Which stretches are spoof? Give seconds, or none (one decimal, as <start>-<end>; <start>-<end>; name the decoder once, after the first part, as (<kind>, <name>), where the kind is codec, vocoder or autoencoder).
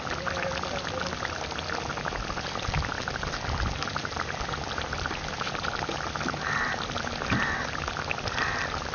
none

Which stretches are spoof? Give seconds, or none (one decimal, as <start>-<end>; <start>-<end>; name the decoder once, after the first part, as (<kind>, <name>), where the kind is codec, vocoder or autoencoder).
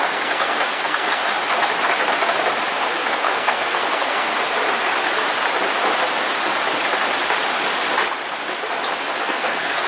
0.0-1.2 (codec, SNAC); 2.9-4.3; 9.2-9.9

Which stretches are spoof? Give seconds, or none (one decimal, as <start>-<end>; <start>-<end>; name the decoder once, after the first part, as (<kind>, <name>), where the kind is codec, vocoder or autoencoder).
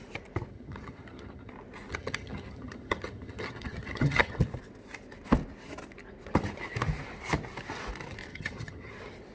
0.5-1.5 (vocoder, HiFi-GAN); 1.9-4.4; 8.3-8.9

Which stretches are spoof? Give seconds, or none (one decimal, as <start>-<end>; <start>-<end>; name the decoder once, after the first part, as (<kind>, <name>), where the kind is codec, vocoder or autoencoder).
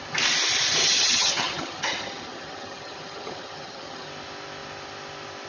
0.8-4.1 (vocoder, HiFi-GAN)